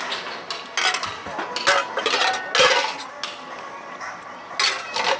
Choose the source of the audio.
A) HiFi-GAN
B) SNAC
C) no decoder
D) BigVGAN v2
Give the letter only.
C